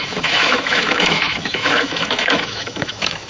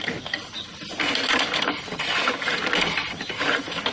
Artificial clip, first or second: first